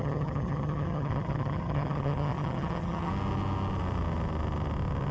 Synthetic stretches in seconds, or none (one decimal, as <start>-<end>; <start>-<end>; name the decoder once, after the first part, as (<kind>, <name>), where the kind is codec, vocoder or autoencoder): 0.0-3.1 (vocoder, HiFi-GAN)